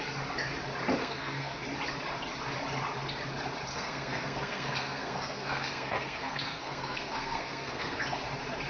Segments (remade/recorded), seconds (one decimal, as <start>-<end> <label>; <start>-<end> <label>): 0.0-1.0 recorded; 1.0-1.6 remade; 1.6-3.7 recorded; 3.7-8.0 remade; 8.0-8.7 recorded